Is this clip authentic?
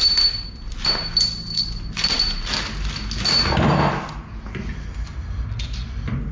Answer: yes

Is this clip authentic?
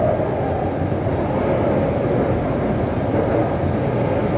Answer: yes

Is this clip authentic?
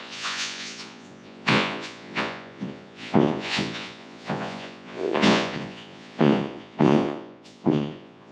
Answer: no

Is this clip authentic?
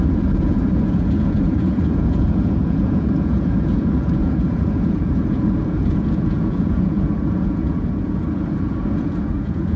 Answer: no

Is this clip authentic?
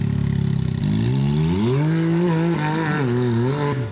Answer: yes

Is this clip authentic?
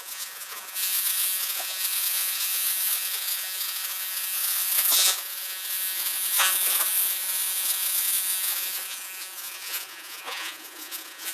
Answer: no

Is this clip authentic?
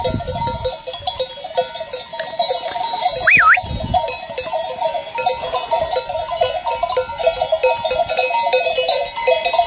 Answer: yes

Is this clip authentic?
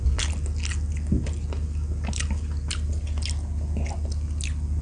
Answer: yes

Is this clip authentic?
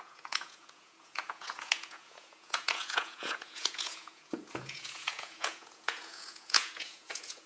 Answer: no